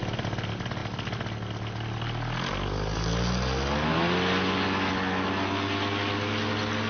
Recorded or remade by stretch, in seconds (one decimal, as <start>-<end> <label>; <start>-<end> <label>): 0.0-6.9 recorded

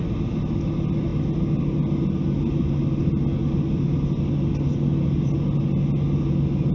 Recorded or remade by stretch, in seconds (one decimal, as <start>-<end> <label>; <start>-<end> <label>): 0.0-6.7 recorded

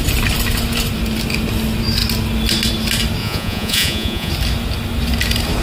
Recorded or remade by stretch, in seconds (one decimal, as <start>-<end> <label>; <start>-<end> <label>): 0.0-3.2 recorded; 3.2-4.3 remade; 4.3-5.6 recorded